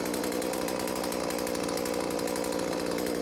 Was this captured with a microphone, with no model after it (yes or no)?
yes